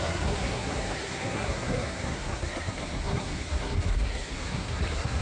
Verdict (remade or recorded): remade